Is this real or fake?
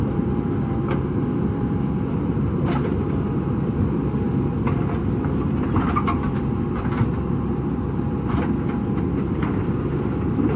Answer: real